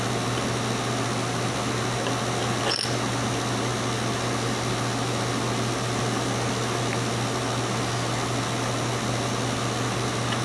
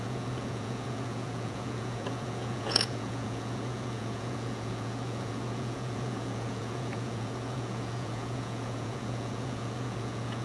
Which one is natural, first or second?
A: first